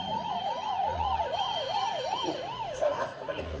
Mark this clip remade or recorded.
remade